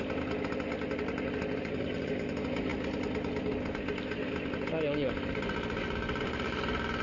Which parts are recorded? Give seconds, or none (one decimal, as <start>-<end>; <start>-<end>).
0.0-7.0

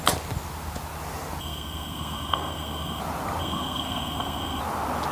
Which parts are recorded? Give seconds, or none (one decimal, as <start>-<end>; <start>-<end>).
0.0-1.4; 3.0-3.4; 4.6-5.1

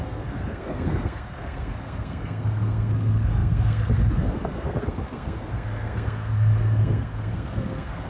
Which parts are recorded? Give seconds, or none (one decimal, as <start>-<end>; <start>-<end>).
none